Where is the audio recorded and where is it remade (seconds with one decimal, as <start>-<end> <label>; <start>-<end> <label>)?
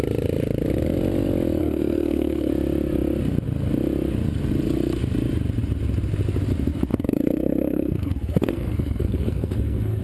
0.0-1.6 recorded; 1.6-2.5 remade; 2.5-6.9 recorded; 6.9-10.0 remade